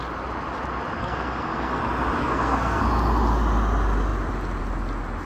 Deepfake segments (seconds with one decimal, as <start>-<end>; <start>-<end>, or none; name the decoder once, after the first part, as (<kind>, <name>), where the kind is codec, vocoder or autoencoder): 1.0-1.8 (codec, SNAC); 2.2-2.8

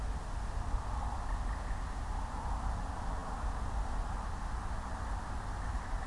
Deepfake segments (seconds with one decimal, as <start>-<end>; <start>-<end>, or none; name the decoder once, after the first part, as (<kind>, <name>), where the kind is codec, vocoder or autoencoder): none

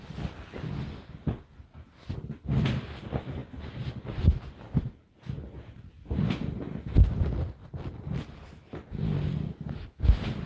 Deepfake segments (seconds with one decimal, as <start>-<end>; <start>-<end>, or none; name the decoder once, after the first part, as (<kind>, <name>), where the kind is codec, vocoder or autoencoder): none

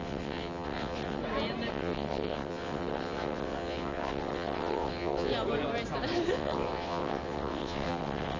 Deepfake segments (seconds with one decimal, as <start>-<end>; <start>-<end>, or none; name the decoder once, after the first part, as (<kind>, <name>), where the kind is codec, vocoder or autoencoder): 0.0-1.2 (vocoder, WaveNeXt); 1.7-5.3; 6.3-8.4

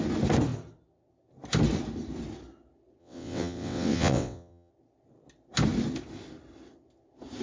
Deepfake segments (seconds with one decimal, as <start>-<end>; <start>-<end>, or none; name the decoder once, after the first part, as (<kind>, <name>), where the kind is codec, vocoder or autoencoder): 3.0-4.7 (vocoder, WaveNeXt)